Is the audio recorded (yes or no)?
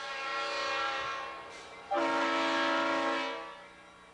yes